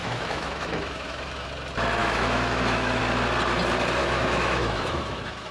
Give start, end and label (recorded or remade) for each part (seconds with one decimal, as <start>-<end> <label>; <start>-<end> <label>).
0.0-1.5 remade; 1.5-2.0 recorded; 2.0-3.0 remade; 3.0-4.0 recorded; 4.0-5.5 remade